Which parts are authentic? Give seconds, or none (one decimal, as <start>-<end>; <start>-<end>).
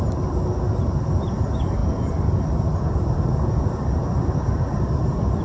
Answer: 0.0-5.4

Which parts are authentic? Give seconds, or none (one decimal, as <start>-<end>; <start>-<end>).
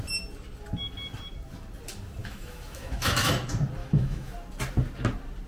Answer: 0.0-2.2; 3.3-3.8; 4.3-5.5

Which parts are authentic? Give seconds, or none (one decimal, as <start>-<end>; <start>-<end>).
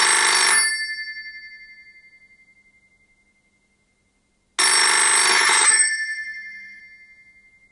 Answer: 0.0-5.3; 6.8-7.7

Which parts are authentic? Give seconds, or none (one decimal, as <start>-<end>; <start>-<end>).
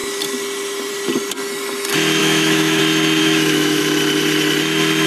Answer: 0.0-2.2; 2.8-3.2; 3.8-5.1